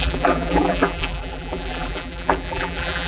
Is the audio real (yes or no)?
no